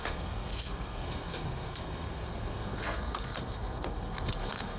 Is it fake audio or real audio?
fake